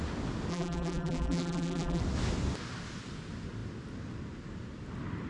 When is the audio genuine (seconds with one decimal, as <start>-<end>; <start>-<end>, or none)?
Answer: 0.0-0.5; 2.0-5.3